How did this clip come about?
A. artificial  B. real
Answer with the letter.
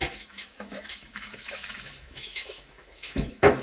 A